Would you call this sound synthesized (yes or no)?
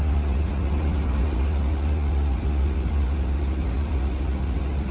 yes